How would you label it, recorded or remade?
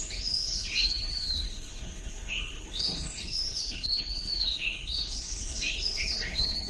remade